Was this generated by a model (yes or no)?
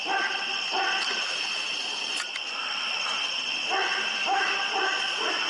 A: no